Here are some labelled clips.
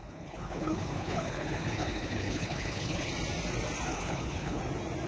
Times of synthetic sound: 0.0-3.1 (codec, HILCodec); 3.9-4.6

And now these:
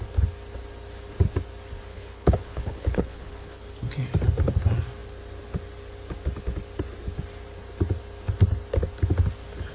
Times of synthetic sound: 1.9-3.9 (codec, HILCodec)